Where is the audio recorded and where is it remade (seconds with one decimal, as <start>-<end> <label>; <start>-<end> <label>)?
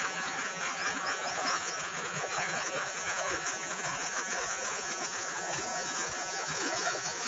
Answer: 0.0-7.3 remade